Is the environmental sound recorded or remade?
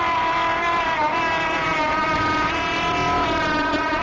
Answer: recorded